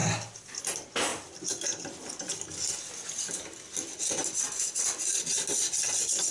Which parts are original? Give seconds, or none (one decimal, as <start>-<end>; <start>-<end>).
0.0-6.3